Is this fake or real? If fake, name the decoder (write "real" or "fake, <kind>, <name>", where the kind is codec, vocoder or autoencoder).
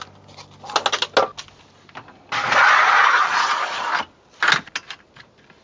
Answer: real